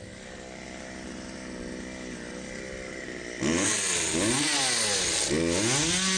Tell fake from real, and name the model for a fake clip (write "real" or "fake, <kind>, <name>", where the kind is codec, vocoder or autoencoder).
real